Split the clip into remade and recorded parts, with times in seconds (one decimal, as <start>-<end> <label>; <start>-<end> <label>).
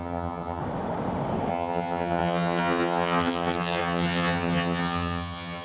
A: 0.0-0.6 remade; 0.6-1.5 recorded; 1.5-5.6 remade